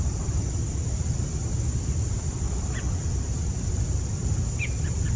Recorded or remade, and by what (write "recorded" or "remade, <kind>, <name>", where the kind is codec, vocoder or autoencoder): recorded